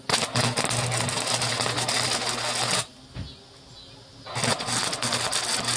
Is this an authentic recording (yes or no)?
yes